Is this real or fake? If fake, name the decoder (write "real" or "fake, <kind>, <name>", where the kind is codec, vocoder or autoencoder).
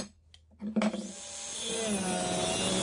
real